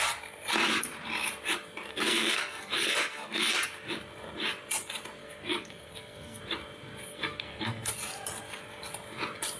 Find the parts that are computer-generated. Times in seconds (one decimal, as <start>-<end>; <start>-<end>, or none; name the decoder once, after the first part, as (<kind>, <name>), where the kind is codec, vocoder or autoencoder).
1.9-3.5 (codec, SNAC); 5.2-6.4; 7.1-7.9